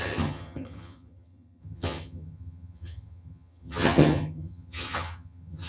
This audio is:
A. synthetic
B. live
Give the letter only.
A